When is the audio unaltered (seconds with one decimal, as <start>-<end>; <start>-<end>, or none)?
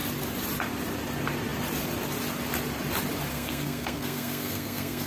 0.0-3.3